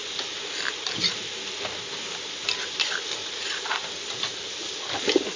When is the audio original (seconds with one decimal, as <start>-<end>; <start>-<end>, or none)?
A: 0.0-5.4